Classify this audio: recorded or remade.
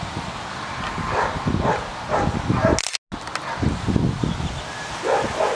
recorded